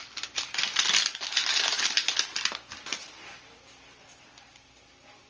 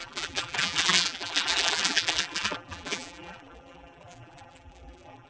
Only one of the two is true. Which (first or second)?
first